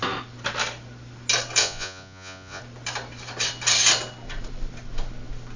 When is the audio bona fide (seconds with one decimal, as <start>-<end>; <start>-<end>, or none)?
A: 0.0-1.6; 2.6-5.6